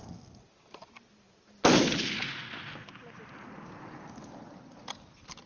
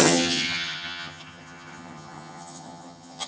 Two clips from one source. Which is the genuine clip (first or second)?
first